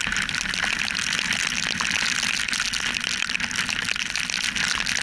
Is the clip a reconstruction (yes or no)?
no